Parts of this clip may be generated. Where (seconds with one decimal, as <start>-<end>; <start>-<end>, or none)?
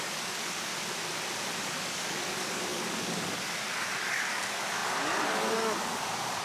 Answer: 0.0-0.7; 1.6-6.4